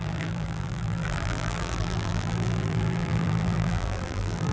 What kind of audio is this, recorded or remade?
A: remade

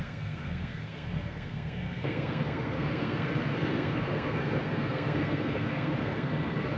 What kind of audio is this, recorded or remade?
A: remade